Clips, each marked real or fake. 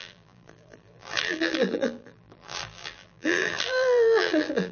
fake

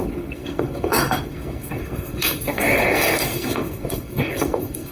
fake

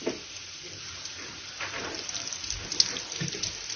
real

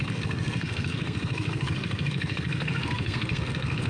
fake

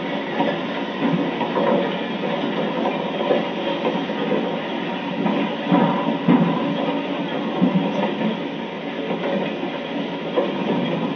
real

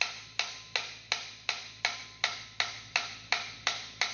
real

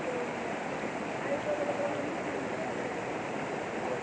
real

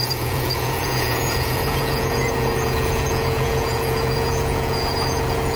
fake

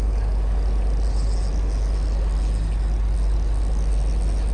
real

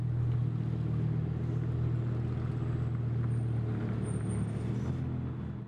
real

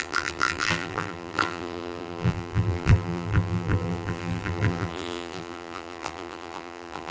fake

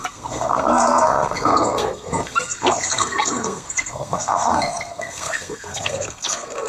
fake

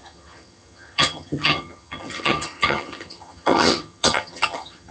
fake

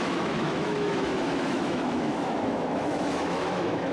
fake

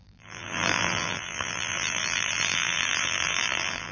fake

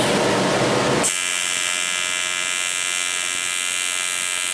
real